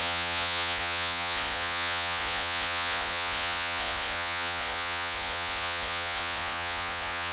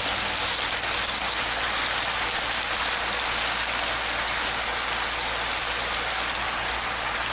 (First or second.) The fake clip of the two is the first